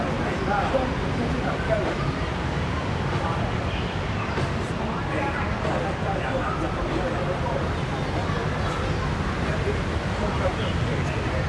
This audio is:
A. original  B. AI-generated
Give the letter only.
A